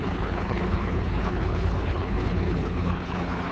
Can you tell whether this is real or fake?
fake